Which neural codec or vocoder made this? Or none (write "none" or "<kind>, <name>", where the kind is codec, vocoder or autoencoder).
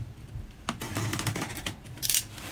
vocoder, BigVGAN v2